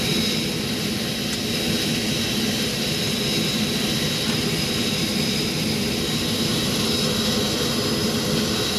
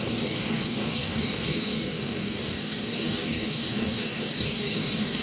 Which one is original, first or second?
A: first